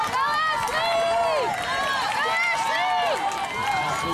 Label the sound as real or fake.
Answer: real